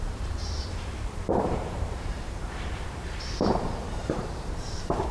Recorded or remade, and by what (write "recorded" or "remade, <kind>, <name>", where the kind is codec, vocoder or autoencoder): remade, vocoder, BigVGAN v2